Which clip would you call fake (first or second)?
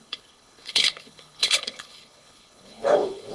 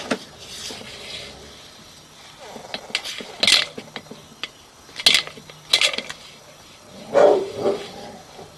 first